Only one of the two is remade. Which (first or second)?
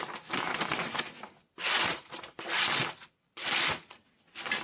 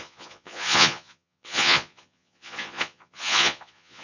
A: second